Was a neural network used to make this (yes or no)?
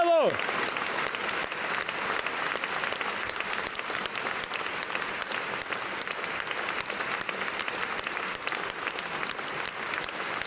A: no